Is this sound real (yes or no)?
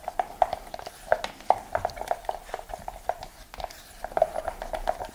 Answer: yes